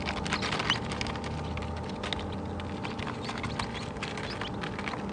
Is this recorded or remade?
recorded